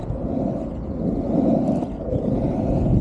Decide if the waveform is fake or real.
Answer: real